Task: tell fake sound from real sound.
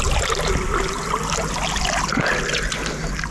real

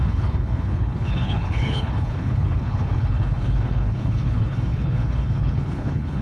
fake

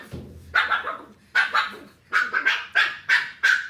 real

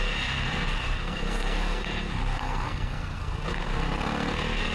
fake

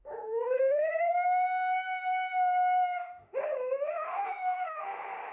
fake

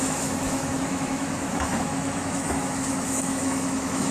fake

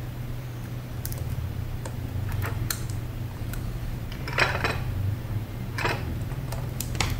fake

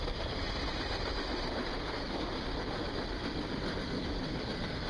real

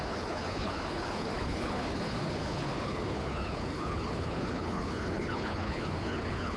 fake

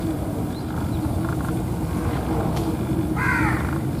real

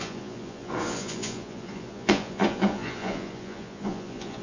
fake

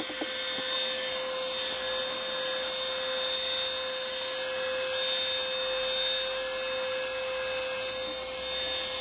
real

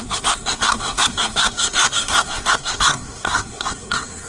fake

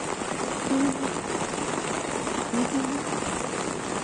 real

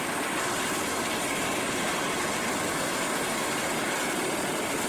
fake